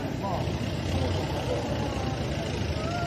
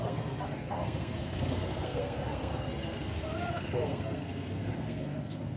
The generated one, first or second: second